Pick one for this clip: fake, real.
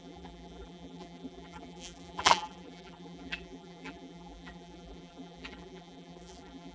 fake